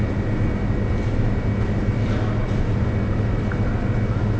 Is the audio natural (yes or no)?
yes